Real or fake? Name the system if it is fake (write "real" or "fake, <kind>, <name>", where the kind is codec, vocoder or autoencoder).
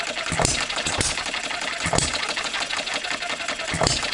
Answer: real